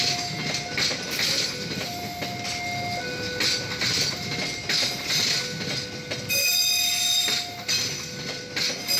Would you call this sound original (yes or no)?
yes